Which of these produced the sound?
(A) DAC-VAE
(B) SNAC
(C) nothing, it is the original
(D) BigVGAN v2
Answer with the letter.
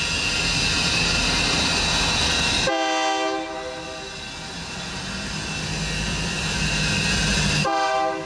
C